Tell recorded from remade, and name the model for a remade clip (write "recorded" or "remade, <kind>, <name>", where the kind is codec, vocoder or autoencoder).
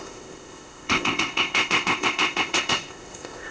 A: remade, codec, ZipCodec